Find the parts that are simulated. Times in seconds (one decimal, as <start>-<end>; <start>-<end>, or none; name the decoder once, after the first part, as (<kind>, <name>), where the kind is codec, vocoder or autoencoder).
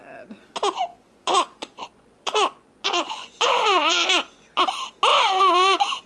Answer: 0.9-4.6 (vocoder, Vocos); 5.1-6.1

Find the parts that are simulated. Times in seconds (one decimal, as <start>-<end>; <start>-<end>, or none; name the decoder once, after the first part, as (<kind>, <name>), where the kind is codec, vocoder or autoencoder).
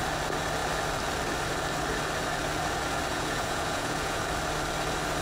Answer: 3.1-4.2 (vocoder, Vocos)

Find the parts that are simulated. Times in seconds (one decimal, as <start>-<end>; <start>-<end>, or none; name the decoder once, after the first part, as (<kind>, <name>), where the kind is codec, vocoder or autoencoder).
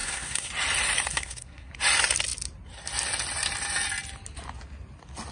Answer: 0.0-0.5 (codec, SNAC); 1.1-1.7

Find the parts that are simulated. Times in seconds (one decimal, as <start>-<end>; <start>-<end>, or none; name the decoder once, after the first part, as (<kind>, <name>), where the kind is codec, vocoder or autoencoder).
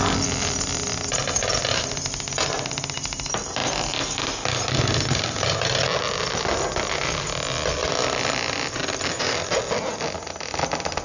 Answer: 7.8-9.2 (vocoder, BigVGAN v2)